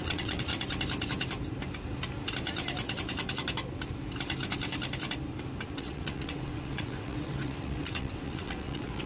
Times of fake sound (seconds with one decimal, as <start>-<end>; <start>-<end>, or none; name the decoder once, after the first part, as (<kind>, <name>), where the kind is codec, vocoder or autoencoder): 0.0-0.5 (vocoder, WaveNeXt); 5.7-9.1